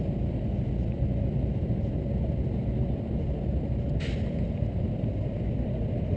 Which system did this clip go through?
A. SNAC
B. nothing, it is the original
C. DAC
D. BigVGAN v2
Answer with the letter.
B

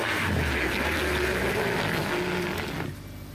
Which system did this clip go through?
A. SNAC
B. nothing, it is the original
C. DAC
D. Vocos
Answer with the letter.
B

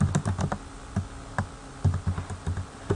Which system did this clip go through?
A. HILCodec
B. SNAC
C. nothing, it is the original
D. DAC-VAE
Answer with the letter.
C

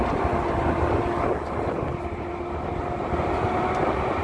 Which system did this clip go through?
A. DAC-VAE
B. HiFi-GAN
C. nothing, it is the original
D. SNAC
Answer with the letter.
C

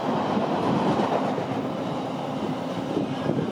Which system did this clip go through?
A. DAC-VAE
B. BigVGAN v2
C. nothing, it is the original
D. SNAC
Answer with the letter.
C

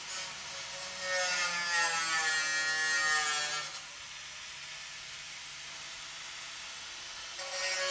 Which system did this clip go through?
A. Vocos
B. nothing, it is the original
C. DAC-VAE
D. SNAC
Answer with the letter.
B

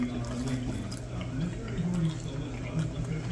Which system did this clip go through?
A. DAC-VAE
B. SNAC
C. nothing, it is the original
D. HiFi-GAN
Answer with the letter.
C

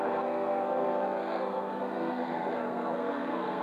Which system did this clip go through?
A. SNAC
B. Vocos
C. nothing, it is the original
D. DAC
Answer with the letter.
A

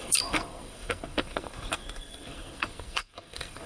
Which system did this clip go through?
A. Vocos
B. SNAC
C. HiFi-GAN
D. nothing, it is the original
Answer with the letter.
B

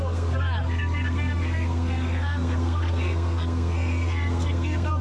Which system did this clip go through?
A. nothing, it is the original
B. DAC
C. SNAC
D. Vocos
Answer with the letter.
C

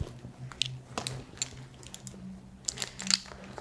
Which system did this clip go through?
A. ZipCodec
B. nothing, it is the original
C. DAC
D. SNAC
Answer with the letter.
B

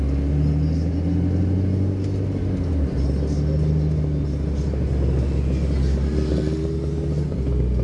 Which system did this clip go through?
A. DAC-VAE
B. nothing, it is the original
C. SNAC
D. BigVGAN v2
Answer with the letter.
B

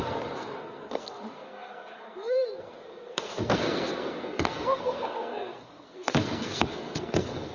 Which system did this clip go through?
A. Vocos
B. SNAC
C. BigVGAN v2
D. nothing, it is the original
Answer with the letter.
B